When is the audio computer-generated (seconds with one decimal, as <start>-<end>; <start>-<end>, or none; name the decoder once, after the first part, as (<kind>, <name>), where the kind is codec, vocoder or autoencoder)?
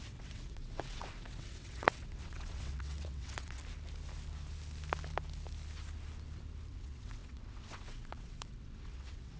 0.0-3.6 (vocoder, WaveNeXt); 6.7-9.4